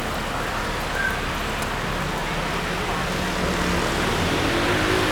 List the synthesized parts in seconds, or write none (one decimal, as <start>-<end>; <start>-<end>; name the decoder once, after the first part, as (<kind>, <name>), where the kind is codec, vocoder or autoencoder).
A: none